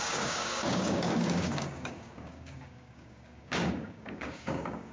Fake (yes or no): yes